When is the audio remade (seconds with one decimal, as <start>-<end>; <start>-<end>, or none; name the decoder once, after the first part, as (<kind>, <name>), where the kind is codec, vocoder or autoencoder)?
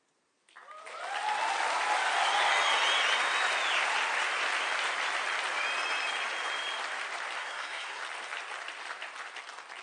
7.4-8.0 (codec, SNAC)